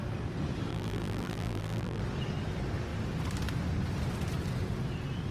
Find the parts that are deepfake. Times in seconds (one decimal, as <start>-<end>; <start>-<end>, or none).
0.7-2.0